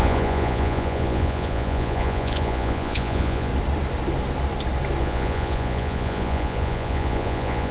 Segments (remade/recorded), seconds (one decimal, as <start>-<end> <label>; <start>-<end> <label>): 0.0-3.5 remade; 3.5-5.0 recorded; 5.0-7.7 remade